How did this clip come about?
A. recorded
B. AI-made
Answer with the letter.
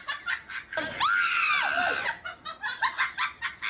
A